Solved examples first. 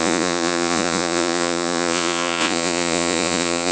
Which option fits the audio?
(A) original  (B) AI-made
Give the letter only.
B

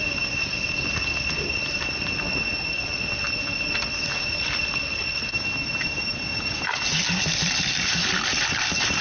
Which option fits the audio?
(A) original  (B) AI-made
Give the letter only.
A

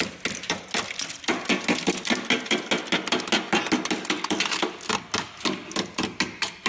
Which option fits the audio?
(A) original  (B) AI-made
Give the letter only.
A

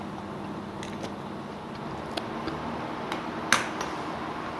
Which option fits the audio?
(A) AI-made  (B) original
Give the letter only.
B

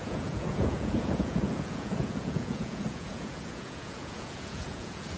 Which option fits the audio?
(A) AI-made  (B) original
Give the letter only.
A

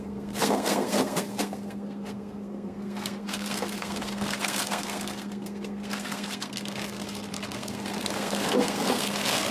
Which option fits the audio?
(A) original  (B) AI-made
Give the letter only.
B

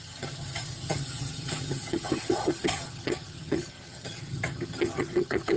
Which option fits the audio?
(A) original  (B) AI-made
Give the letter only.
B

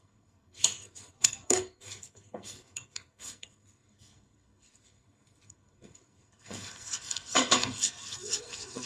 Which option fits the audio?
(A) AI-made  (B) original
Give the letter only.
A